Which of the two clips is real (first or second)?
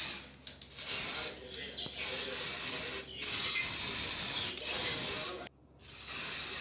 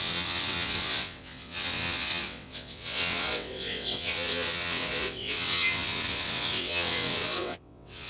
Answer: first